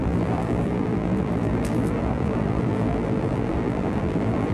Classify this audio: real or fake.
fake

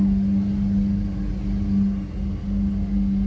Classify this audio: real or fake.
real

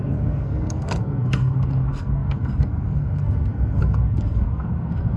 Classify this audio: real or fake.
fake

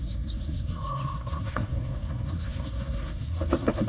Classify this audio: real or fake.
fake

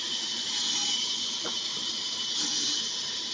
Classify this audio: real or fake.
real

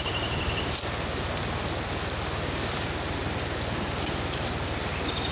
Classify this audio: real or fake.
real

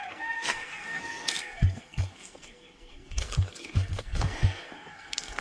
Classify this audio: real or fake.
fake